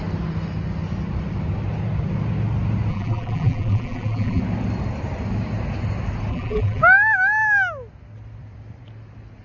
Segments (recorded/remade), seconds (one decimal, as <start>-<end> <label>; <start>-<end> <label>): 0.0-2.9 recorded; 2.9-4.4 remade; 4.4-6.3 recorded; 6.3-6.8 remade; 6.8-9.4 recorded